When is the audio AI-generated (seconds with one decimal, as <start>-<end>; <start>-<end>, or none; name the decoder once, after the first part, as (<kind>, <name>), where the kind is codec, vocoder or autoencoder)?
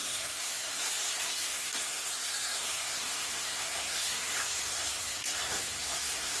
0.0-6.4 (codec, SNAC)